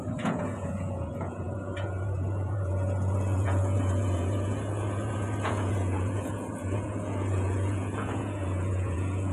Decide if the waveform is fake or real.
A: fake